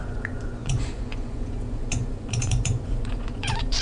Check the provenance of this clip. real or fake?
fake